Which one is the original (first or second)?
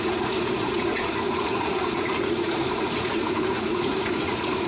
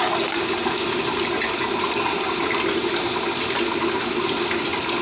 second